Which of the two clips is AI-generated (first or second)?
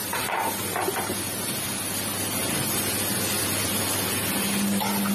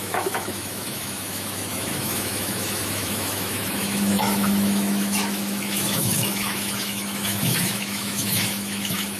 second